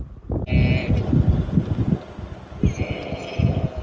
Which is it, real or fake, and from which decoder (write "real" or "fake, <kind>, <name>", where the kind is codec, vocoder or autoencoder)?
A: real